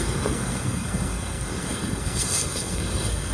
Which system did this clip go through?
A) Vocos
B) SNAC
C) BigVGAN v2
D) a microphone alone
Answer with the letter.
B